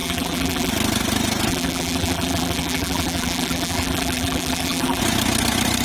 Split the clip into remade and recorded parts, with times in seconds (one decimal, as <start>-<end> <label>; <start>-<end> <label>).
0.0-0.7 remade; 0.7-1.5 recorded; 1.5-5.0 remade; 5.0-5.8 recorded